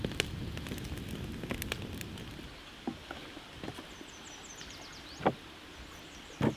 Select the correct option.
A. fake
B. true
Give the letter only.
B